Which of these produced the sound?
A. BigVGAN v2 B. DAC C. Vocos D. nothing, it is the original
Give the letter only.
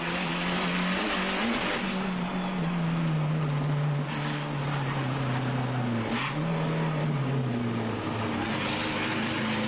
D